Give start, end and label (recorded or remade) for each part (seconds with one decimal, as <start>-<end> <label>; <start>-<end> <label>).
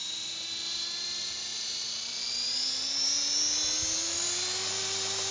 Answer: 0.0-5.3 recorded